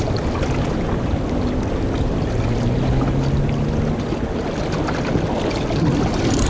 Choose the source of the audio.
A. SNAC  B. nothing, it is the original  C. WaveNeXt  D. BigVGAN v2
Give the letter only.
B